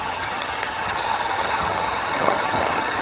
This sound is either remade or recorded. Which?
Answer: remade